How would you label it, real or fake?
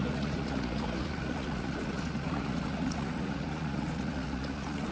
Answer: fake